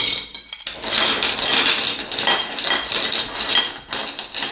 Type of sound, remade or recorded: recorded